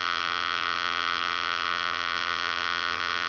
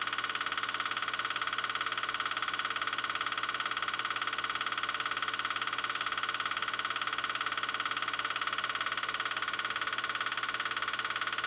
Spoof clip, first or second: first